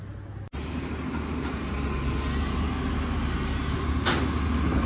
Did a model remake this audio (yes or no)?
no